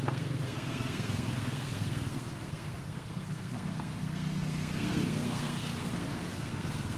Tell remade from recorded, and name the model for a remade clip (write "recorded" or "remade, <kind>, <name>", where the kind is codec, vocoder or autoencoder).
remade, codec, SNAC